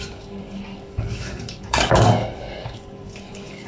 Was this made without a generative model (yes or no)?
no